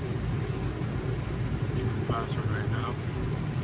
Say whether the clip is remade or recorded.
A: remade